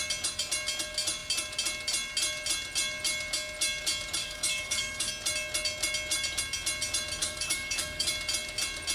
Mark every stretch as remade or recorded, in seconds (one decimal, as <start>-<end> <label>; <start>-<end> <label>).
0.0-4.2 recorded; 4.2-5.1 remade; 5.1-7.2 recorded; 7.2-8.1 remade; 8.1-8.9 recorded